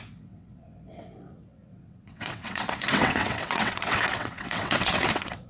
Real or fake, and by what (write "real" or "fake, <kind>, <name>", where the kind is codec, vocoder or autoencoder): fake, vocoder, WaveNeXt